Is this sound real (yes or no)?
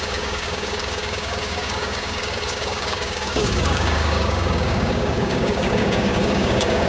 no